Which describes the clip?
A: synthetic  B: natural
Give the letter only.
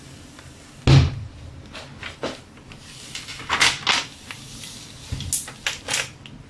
B